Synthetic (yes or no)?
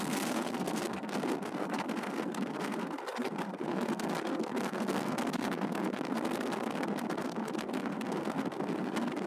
yes